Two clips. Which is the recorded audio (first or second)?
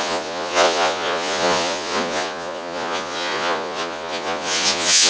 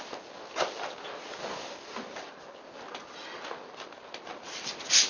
second